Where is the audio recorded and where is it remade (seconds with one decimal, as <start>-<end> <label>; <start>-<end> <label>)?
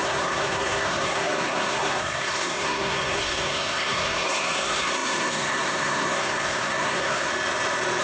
0.0-7.3 remade; 7.3-8.0 recorded